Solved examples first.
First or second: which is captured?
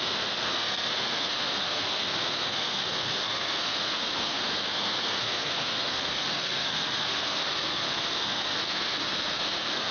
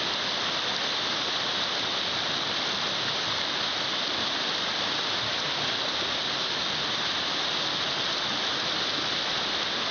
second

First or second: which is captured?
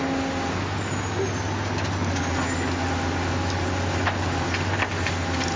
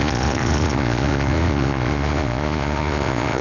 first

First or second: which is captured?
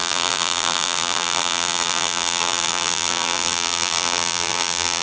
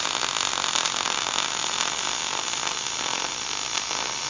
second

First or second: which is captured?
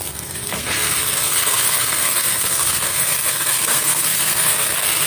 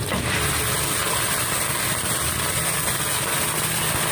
second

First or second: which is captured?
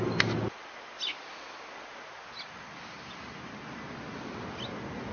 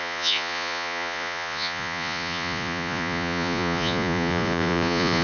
first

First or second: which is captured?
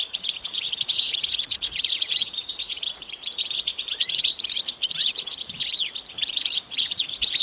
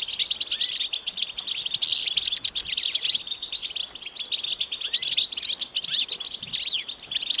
second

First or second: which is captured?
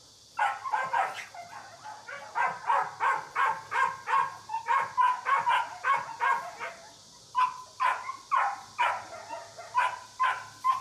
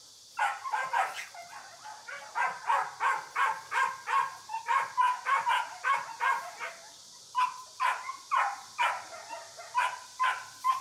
first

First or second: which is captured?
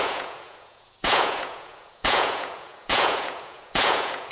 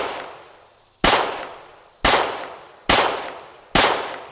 second